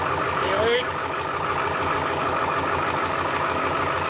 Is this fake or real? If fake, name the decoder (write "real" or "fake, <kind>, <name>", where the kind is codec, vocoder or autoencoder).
fake, codec, DAC